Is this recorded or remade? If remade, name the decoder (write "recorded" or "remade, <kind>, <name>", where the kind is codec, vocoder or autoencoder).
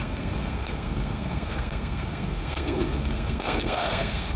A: remade, codec, SNAC